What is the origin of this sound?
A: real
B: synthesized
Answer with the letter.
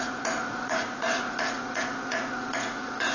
B